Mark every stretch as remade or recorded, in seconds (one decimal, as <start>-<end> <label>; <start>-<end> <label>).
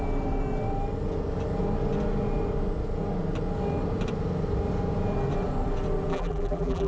0.0-6.1 recorded; 6.1-6.9 remade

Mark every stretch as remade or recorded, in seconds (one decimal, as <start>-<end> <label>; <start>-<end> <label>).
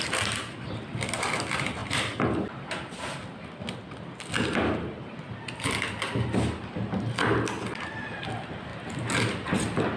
0.0-10.0 recorded